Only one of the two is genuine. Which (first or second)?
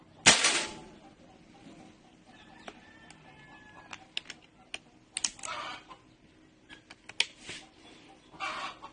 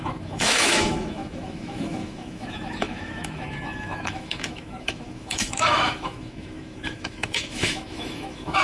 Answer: first